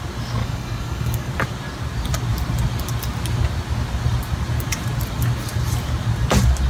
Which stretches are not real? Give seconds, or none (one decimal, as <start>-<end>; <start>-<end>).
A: 0.4-1.3